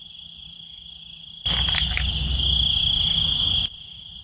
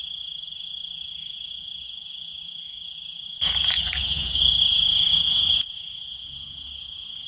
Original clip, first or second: first